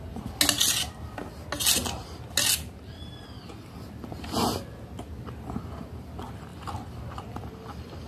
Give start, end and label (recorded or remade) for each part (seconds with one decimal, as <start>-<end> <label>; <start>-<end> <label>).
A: 0.0-8.1 recorded